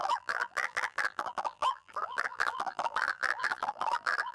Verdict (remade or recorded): remade